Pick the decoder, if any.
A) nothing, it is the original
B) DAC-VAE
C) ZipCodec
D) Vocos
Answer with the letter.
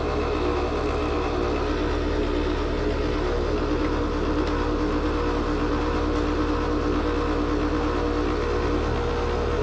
A